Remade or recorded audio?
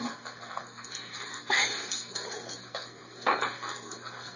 remade